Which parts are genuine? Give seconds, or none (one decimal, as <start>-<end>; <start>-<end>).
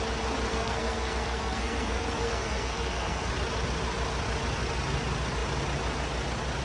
0.0-0.5; 3.3-6.6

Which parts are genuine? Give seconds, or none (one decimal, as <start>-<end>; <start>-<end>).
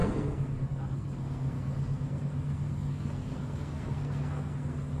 none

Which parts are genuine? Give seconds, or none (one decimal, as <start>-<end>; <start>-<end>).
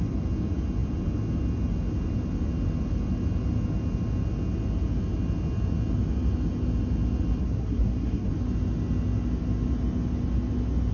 0.0-7.4; 8.3-10.9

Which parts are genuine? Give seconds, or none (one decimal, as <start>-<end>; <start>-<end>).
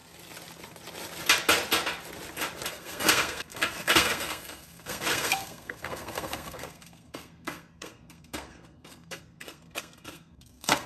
0.0-2.7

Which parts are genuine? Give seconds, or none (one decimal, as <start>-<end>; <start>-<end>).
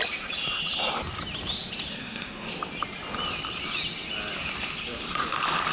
0.0-1.9; 2.5-5.7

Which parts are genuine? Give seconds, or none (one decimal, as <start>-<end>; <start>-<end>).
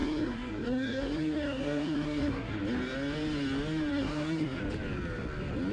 2.6-3.9; 4.6-5.7